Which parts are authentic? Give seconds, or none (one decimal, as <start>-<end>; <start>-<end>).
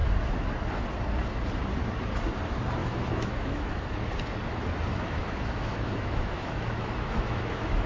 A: 0.0-2.8; 3.7-4.9